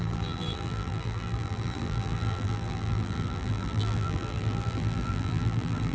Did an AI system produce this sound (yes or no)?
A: yes